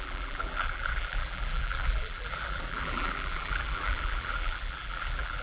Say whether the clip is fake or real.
fake